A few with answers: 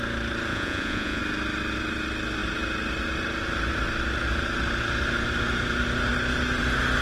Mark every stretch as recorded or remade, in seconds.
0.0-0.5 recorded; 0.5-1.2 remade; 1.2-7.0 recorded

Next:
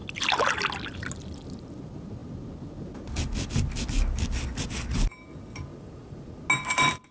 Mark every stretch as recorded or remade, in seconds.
0.0-5.7 recorded; 5.7-6.4 remade; 6.4-7.1 recorded

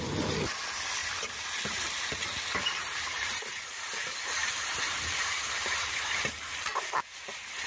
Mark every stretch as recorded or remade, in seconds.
0.0-1.0 recorded; 1.0-2.4 remade; 2.4-2.8 recorded; 2.8-3.4 remade; 3.4-4.4 recorded; 4.4-6.3 remade; 6.3-7.7 recorded